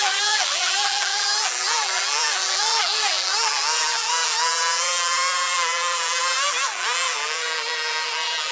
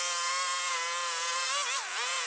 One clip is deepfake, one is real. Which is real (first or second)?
second